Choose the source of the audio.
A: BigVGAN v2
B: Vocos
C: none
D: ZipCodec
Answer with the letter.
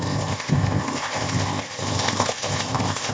D